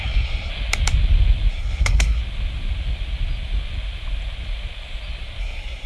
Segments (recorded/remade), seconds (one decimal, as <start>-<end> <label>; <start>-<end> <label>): 0.0-0.5 remade; 0.5-1.5 recorded; 1.5-2.2 remade; 2.2-5.4 recorded; 5.4-5.9 remade